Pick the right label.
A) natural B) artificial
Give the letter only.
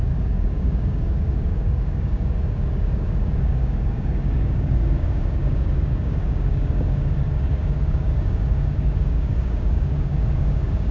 B